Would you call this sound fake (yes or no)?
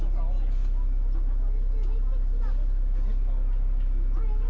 no